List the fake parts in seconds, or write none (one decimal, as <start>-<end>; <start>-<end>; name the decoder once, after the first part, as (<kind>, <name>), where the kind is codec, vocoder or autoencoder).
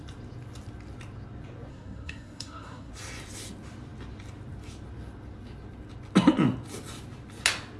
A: 1.7-2.9 (codec, SNAC)